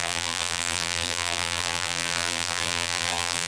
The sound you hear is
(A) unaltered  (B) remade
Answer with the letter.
B